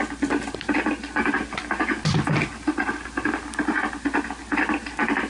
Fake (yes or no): no